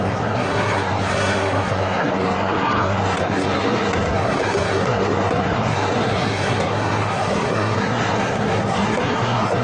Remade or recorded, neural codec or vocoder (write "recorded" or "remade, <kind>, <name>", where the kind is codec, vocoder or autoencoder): remade, codec, SNAC